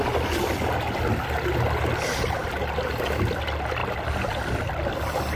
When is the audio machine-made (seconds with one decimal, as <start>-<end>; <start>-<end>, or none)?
none